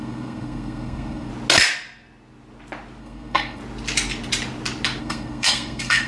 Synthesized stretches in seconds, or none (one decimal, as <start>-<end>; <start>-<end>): 0.0-1.3; 3.0-3.6; 5.0-6.1